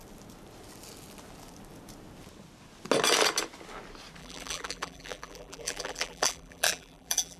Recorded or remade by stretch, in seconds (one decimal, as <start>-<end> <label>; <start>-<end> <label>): 0.0-4.2 recorded; 4.2-7.4 remade